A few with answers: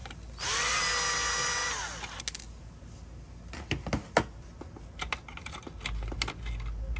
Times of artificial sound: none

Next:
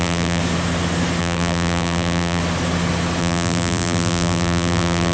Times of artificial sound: 0.0-0.4 (vocoder, BigVGAN v2); 1.2-2.4; 3.2-5.1

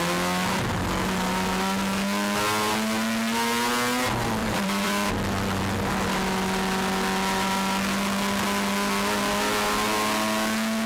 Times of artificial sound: 4.4-5.1 (vocoder, BigVGAN v2)

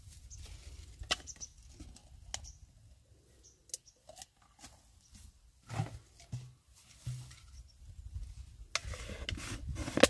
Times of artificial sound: none